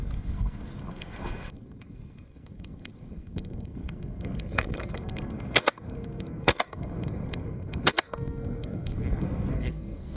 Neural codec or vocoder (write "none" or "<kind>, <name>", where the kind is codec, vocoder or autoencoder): codec, SNAC